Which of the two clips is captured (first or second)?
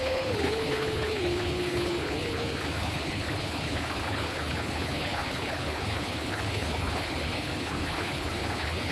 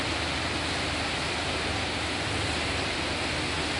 second